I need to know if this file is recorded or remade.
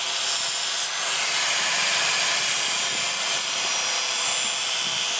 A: recorded